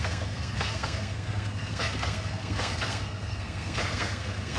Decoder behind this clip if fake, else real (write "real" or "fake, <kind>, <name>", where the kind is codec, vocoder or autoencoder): fake, codec, SNAC